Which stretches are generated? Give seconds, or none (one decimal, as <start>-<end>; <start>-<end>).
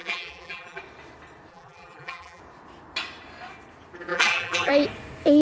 0.0-0.8; 1.5-2.4; 4.1-4.7